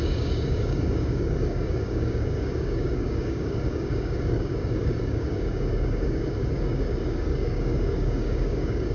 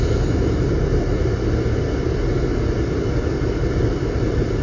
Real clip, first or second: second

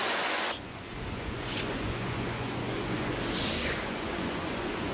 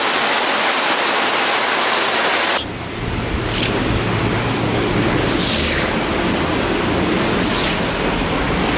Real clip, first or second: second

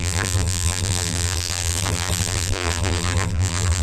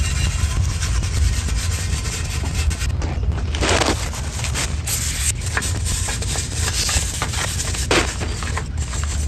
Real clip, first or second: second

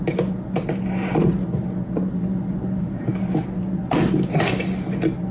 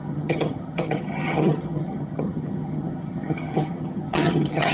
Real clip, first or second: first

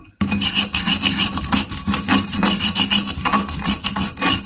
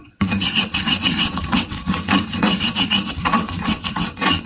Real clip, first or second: first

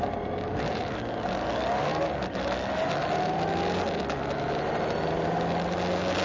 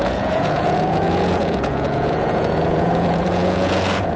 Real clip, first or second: first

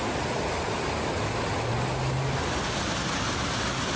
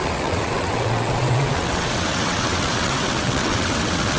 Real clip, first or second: first